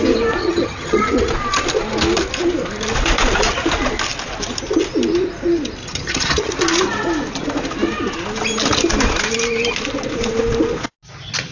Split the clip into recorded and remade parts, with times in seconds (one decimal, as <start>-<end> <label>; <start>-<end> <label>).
0.0-0.4 recorded; 0.4-1.3 remade; 1.3-5.8 recorded; 5.8-6.5 remade; 6.5-11.5 recorded